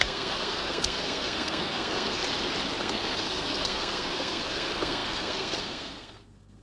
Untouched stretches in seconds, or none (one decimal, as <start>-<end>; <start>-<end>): 2.2-2.8